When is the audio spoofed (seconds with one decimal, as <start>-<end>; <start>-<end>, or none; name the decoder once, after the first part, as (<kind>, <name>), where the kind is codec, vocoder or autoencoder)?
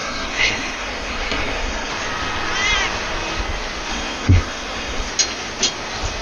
0.0-1.9 (codec, SNAC); 3.9-5.1